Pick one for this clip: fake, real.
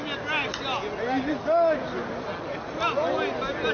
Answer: real